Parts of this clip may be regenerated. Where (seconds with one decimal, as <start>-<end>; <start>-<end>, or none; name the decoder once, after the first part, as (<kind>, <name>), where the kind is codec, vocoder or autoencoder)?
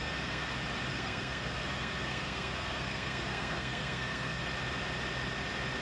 0.0-0.5 (codec, SNAC); 0.9-4.4